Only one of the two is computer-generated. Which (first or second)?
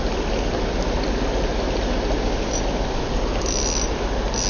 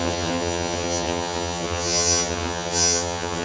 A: second